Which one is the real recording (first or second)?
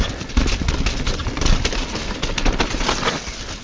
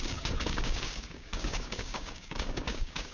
first